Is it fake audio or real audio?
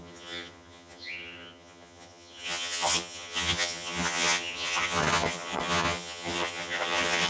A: fake